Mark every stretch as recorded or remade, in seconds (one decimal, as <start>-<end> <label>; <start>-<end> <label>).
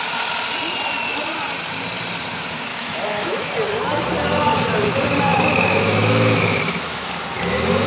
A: 0.0-2.7 recorded; 2.7-3.5 remade; 3.5-5.3 recorded; 5.3-7.1 remade; 7.1-7.9 recorded